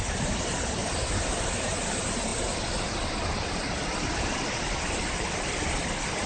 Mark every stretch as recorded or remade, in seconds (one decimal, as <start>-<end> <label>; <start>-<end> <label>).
0.0-6.3 recorded